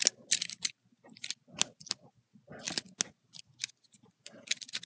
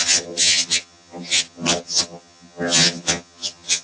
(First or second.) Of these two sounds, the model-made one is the second